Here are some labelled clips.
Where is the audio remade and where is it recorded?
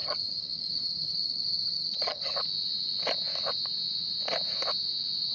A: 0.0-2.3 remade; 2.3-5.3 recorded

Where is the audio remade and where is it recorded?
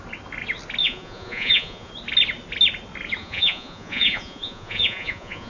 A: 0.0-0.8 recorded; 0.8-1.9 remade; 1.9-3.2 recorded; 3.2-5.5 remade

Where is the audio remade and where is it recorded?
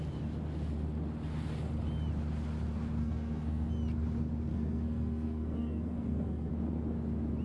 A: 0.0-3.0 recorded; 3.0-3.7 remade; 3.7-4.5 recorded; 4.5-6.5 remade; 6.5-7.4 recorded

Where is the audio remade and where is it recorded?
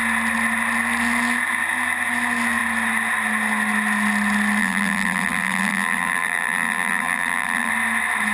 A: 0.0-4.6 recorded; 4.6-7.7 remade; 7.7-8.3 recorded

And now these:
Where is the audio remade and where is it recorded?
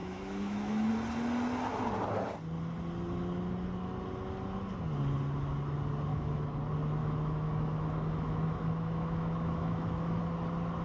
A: 0.0-0.9 remade; 0.9-6.1 recorded; 6.1-6.6 remade; 6.6-7.0 recorded; 7.0-10.2 remade; 10.2-10.8 recorded